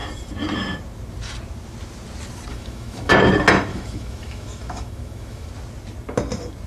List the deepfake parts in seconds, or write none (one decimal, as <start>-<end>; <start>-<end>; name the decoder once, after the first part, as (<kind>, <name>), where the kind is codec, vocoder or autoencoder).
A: 2.5-3.1 (autoencoder, DAC-VAE); 3.7-5.5